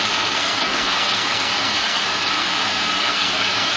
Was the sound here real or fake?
fake